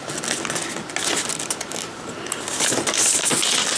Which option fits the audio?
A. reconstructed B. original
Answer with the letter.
B